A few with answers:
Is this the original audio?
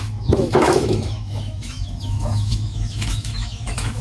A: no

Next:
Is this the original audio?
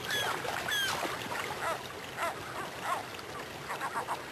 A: yes